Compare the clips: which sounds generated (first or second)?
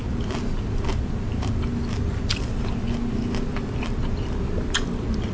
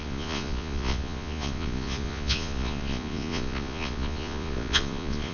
second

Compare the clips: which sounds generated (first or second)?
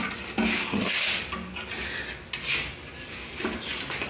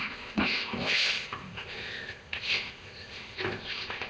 second